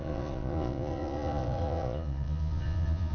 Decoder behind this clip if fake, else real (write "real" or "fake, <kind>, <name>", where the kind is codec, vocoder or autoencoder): fake, vocoder, Vocos